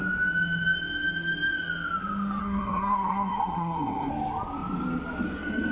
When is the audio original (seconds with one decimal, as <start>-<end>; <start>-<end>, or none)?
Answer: 0.0-2.4; 4.1-5.7